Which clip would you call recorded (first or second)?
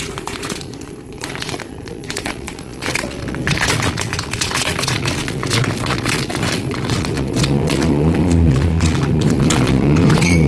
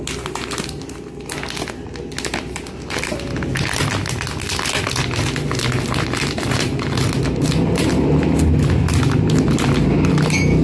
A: second